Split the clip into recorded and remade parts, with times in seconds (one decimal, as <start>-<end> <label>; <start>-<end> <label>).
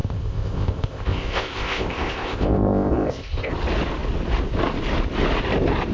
0.0-3.5 remade; 3.5-5.9 recorded